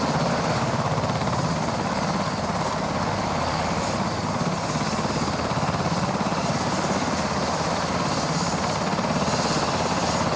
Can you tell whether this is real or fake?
real